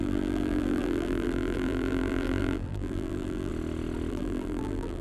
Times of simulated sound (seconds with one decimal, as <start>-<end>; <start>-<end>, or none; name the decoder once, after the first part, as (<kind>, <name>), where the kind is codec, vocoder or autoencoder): 0.0-3.5 (vocoder, BigVGAN v2); 4.1-5.0